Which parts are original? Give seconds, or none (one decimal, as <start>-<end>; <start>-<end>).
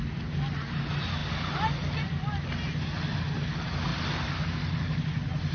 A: 0.0-5.5